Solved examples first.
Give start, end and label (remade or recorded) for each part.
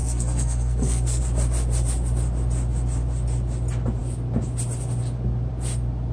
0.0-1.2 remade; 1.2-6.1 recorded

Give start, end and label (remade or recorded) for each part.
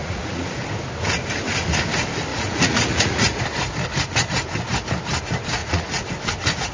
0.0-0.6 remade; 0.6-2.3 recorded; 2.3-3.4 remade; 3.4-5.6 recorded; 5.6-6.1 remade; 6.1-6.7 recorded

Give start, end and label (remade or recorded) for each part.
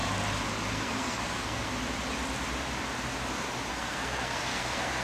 0.0-0.7 recorded; 0.7-1.7 remade; 1.7-3.7 recorded; 3.7-5.0 remade